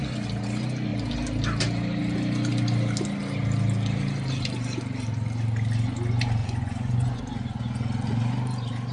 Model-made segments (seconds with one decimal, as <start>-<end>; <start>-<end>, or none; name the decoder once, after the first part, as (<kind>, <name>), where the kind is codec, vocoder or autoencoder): 6.4-7.2 (vocoder, Vocos)